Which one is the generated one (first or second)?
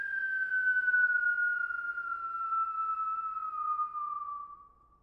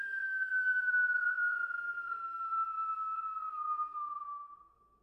second